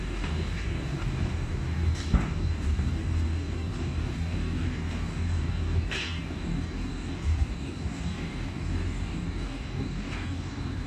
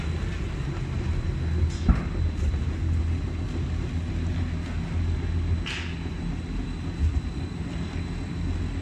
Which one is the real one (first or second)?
second